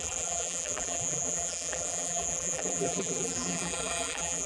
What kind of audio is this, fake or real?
fake